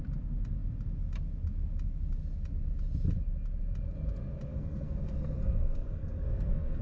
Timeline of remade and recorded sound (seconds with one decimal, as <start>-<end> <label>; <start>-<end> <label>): 0.0-4.5 recorded; 4.5-6.8 remade

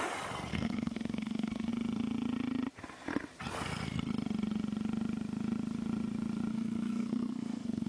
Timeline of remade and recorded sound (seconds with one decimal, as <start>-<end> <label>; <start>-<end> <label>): 0.0-0.5 recorded; 0.5-1.7 remade; 1.7-6.5 recorded; 6.5-7.9 remade